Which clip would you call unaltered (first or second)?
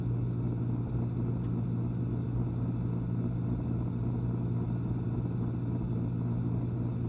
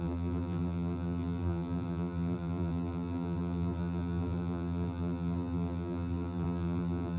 first